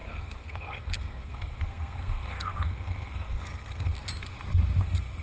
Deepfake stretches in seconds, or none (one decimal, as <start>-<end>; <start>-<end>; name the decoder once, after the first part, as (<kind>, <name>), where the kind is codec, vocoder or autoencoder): 0.0-3.9 (codec, SNAC); 4.8-5.2